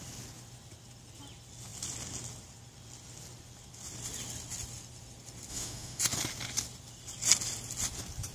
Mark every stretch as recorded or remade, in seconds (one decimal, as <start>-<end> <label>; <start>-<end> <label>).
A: 0.0-5.5 recorded; 5.5-6.0 remade; 6.0-8.3 recorded